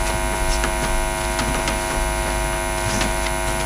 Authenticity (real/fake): real